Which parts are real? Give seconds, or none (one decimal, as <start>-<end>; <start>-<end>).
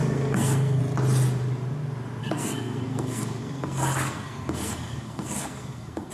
0.8-2.2